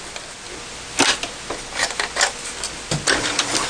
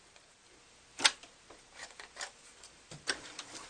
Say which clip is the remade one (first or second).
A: second